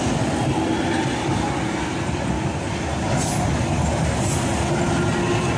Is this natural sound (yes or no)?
yes